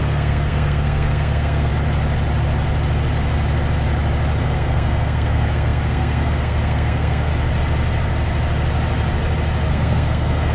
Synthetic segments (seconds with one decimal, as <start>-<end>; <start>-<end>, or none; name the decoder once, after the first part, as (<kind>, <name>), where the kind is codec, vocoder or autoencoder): 0.0-1.7 (codec, SNAC); 4.4-7.3; 9.7-10.5

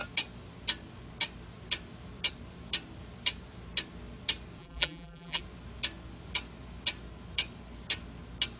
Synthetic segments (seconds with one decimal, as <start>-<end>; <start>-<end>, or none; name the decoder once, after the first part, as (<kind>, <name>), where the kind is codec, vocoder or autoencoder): 4.6-5.4 (vocoder, BigVGAN v2)

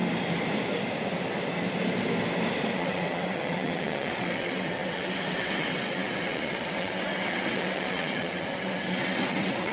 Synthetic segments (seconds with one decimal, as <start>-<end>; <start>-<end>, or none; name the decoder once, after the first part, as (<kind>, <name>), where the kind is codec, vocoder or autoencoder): 2.7-9.7 (vocoder, WaveNeXt)

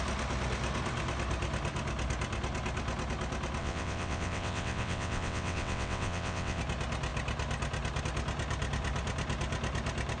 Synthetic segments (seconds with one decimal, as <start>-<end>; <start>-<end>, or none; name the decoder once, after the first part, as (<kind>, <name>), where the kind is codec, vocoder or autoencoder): 3.6-6.6 (vocoder, WaveNeXt)

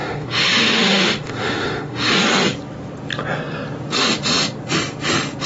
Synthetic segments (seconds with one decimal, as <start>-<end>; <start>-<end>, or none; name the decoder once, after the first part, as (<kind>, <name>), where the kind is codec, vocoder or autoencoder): 0.0-2.1 (autoencoder, DAC-VAE)

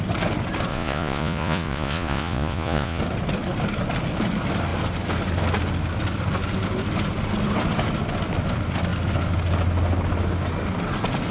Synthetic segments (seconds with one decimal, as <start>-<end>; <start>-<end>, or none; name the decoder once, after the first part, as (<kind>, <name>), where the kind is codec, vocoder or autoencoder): 0.7-3.0 (vocoder, Vocos)

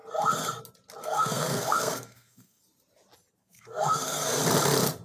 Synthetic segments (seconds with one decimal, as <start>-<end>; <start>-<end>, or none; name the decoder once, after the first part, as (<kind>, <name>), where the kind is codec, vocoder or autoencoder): 1.0-2.6 (codec, SNAC); 3.4-4.4